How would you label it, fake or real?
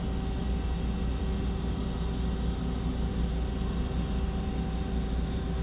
real